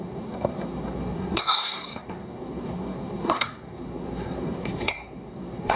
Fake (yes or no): yes